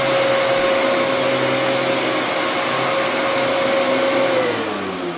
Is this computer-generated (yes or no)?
no